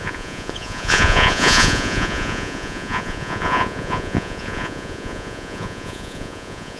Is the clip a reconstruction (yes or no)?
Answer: yes